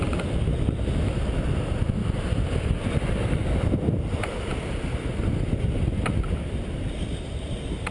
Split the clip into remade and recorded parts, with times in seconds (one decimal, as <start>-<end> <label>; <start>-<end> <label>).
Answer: 0.0-2.0 recorded; 2.0-4.1 remade; 4.1-7.9 recorded